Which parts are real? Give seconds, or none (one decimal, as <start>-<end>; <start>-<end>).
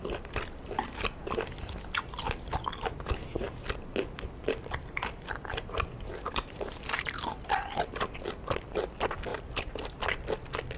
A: 0.0-5.5; 8.2-9.3; 9.9-10.8